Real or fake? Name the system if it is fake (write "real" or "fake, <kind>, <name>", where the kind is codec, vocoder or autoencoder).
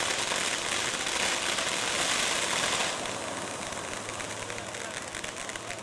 real